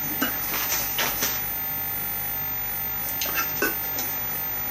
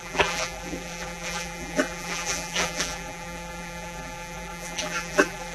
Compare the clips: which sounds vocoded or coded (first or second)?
second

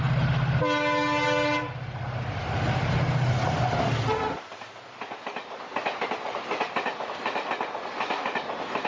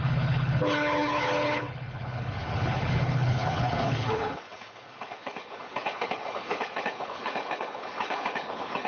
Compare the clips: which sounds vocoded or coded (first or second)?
second